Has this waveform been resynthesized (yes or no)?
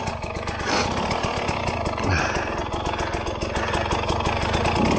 no